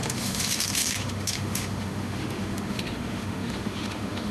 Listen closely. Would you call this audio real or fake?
fake